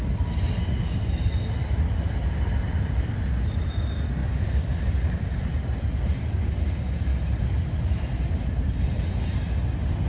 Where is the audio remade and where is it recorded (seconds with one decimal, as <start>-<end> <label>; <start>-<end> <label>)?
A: 0.0-10.1 recorded